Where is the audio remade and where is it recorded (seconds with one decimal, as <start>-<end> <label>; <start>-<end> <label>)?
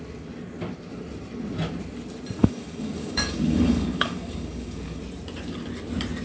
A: 0.0-2.4 recorded; 2.4-5.0 remade; 5.0-6.2 recorded